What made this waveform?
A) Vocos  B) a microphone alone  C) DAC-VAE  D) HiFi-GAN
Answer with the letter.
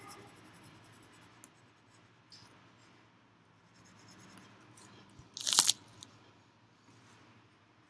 B